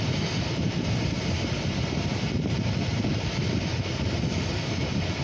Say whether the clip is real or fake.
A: fake